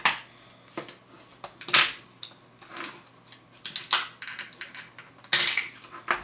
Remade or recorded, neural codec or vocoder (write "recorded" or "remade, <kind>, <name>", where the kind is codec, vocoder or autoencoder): recorded